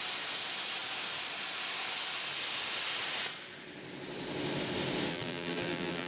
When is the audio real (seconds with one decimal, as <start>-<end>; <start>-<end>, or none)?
0.0-5.1